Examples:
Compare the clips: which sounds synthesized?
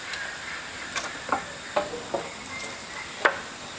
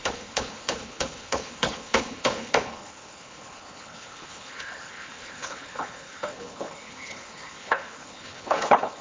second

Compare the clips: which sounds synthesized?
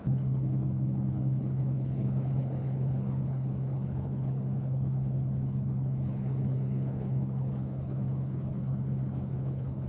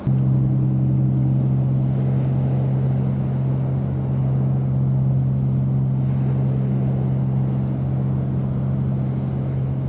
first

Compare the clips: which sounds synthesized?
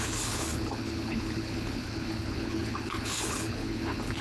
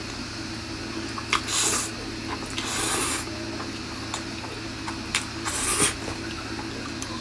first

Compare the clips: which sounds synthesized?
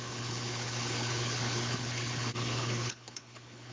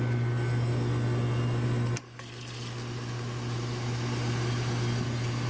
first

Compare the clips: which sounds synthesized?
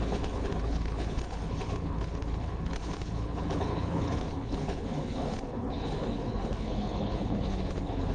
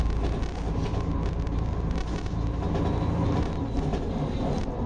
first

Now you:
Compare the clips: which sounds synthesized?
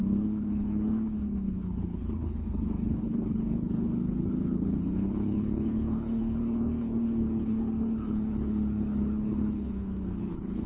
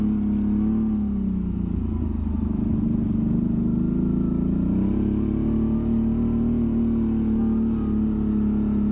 first